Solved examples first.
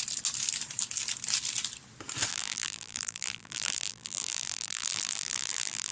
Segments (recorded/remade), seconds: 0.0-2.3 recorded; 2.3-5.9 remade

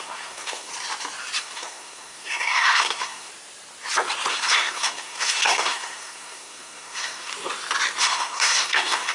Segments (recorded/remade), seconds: 0.0-0.7 remade; 0.7-1.4 recorded; 1.4-3.3 remade; 3.3-4.3 recorded; 4.3-7.3 remade; 7.3-8.0 recorded; 8.0-9.1 remade

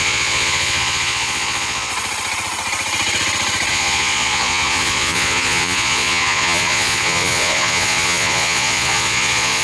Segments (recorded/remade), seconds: 0.0-1.9 remade; 1.9-3.7 recorded; 3.7-9.6 remade

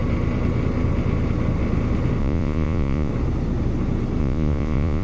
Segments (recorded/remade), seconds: 0.0-2.2 recorded; 2.2-3.1 remade; 3.1-4.2 recorded; 4.2-5.0 remade

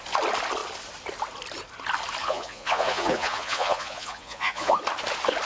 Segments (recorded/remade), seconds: 0.0-2.2 recorded; 2.2-4.8 remade; 4.8-5.5 recorded

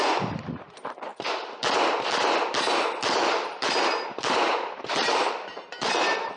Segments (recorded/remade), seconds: 0.0-1.1 remade; 1.1-4.9 recorded; 4.9-6.4 remade

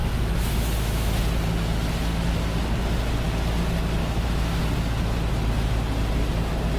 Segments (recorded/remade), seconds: 0.0-1.2 remade; 1.2-4.0 recorded; 4.0-4.6 remade; 4.6-6.8 recorded

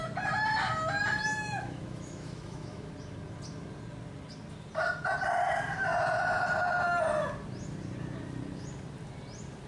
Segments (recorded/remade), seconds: 0.0-1.2 recorded; 1.2-2.9 remade; 2.9-9.7 recorded